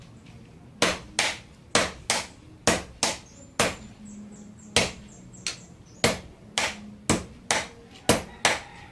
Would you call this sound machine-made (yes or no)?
no